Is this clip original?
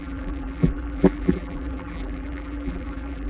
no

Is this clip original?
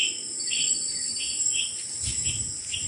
no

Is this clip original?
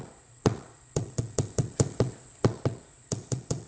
no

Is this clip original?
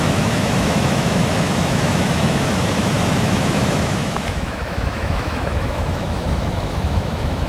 no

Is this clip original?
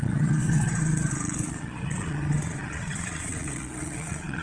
no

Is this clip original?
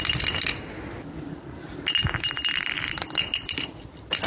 yes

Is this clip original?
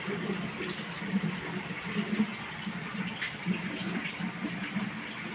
yes